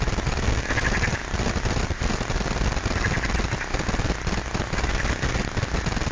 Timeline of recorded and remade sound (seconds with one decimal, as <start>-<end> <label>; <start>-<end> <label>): 0.0-6.1 recorded